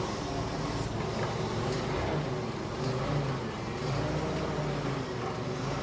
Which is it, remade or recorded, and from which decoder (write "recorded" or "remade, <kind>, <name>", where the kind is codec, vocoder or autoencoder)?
recorded